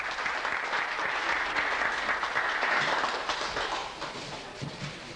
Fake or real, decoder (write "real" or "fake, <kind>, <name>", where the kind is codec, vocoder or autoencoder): real